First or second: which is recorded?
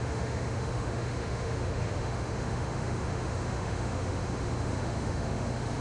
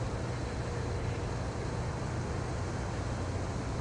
second